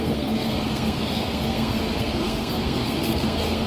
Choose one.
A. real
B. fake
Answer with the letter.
B